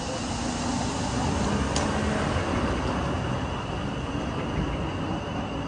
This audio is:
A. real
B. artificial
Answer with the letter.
B